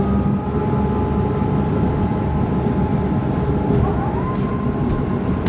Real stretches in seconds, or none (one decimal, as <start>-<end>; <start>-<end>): 0.0-5.5